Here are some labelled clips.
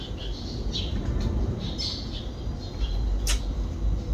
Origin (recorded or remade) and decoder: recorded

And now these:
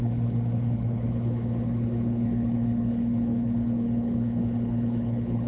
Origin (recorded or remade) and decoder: remade, codec, HILCodec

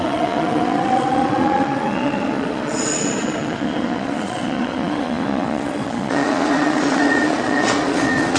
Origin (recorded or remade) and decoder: remade, vocoder, Vocos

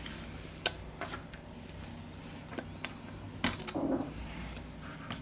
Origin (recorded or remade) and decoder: recorded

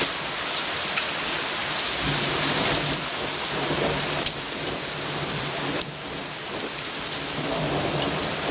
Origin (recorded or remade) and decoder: recorded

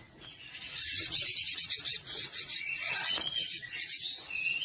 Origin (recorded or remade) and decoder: remade, vocoder, Vocos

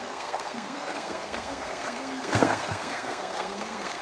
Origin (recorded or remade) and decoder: remade, codec, SNAC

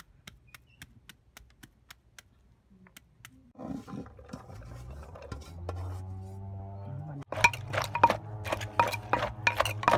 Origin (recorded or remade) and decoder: recorded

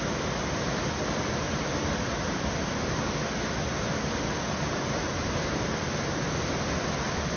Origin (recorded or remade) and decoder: recorded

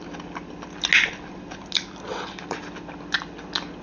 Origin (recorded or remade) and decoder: recorded